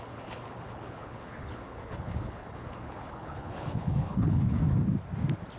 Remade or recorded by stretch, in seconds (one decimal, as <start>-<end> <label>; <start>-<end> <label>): 0.0-4.6 remade; 4.6-5.6 recorded